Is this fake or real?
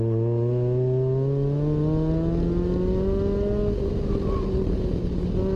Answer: real